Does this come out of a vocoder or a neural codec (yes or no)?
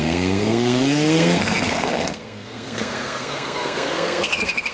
yes